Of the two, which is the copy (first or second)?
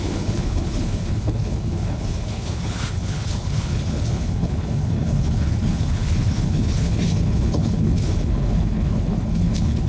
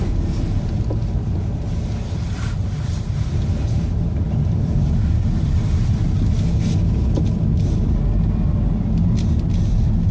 first